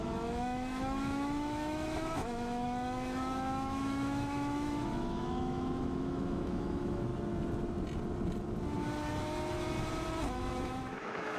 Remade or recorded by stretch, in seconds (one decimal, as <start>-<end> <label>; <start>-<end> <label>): 0.0-7.1 remade; 7.1-10.3 recorded; 10.3-11.4 remade